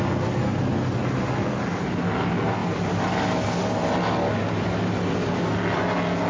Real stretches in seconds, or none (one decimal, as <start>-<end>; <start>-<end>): 0.0-6.3